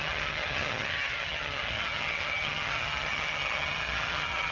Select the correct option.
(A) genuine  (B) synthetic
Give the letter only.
B